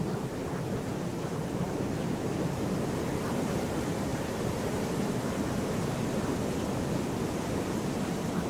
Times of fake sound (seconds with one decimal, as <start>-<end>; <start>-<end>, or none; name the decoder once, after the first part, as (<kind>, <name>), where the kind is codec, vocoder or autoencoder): none